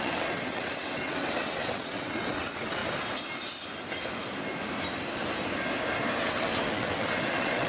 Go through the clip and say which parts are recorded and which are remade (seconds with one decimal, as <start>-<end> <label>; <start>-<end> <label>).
0.0-2.8 remade; 2.8-6.2 recorded; 6.2-7.7 remade

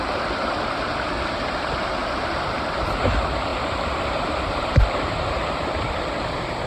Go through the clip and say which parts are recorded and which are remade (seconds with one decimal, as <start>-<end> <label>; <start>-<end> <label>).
0.0-2.0 recorded; 2.0-2.6 remade; 2.6-3.5 recorded; 3.5-5.5 remade; 5.5-6.7 recorded